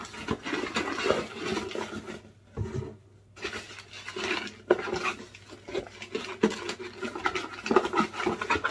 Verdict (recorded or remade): recorded